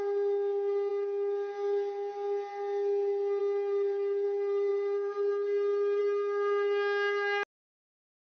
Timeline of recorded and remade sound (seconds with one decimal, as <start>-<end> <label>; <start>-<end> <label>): 0.0-8.4 recorded